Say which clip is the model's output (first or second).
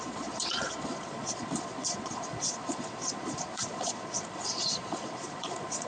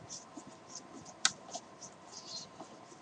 first